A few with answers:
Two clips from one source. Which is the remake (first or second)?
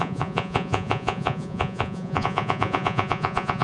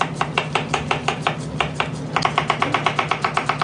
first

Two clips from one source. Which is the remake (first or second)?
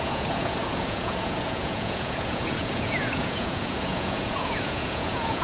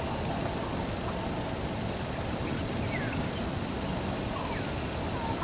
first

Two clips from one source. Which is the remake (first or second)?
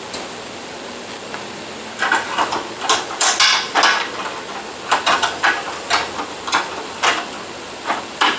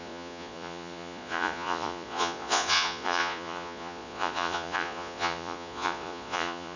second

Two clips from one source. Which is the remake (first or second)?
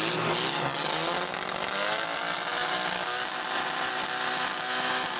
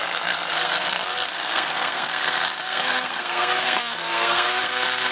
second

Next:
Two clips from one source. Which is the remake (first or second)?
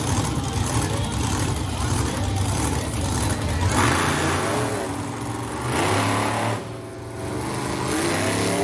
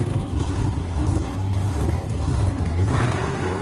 second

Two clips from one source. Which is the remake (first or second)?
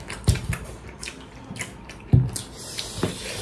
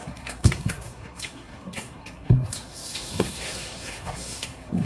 second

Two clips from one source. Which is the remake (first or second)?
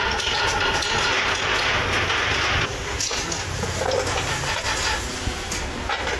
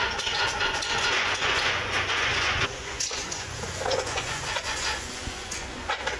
second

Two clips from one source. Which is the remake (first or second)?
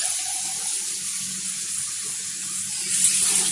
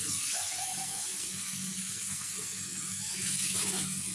second